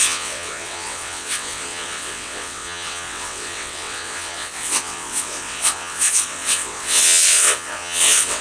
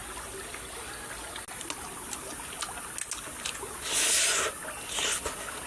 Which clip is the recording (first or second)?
second